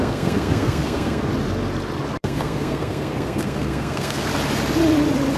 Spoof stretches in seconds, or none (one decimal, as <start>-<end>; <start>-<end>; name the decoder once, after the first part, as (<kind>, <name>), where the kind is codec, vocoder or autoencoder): 0.0-1.3 (codec, SNAC); 2.2-4.3

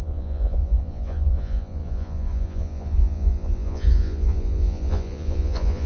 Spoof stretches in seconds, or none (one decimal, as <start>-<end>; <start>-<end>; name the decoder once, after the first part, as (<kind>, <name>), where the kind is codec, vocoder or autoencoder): 0.0-5.9 (vocoder, Vocos)